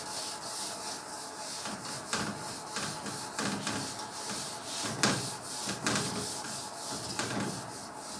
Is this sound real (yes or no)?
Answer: yes